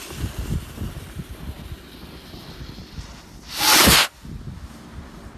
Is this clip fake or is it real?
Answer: real